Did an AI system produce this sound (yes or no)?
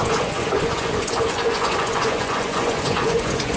yes